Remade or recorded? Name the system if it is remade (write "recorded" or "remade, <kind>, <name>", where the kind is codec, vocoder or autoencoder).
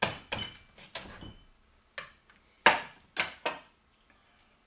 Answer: recorded